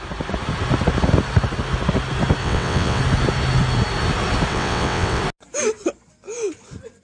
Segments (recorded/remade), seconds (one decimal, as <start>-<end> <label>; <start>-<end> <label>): 0.0-2.4 recorded; 2.4-3.0 remade; 3.0-4.5 recorded; 4.5-5.2 remade; 5.2-7.0 recorded